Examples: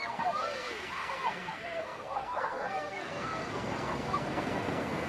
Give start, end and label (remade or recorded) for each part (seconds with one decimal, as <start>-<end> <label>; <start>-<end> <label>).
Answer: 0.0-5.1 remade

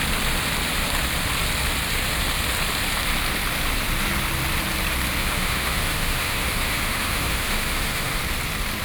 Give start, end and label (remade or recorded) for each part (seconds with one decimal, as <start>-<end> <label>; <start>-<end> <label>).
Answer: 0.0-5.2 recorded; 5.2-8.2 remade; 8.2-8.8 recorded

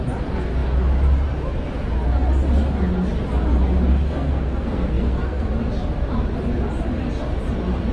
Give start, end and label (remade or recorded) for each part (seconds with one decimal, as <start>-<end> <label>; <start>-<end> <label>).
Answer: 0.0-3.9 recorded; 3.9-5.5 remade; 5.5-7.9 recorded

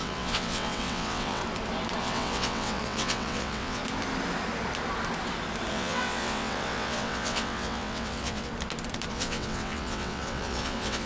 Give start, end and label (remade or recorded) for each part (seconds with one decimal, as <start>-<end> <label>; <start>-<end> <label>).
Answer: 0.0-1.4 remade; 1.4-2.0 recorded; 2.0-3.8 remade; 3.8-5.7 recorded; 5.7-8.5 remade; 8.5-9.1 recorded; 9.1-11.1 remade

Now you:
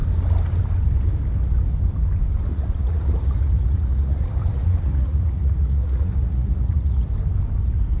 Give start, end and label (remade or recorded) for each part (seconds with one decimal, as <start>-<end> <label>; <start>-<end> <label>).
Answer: 0.0-2.5 recorded; 2.5-7.1 remade; 7.1-8.0 recorded